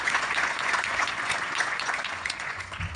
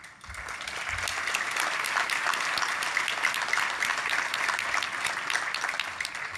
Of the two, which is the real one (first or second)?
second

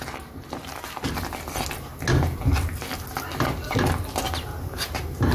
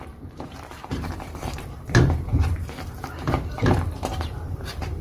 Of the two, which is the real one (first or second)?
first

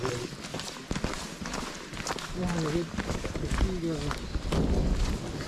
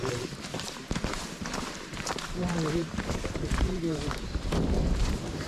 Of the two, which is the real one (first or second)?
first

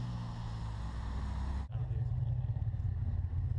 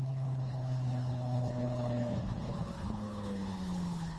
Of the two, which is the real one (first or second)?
first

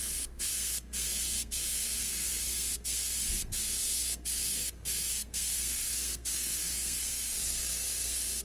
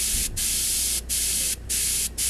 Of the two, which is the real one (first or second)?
second